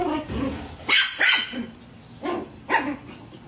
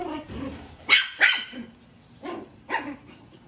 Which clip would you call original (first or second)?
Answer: first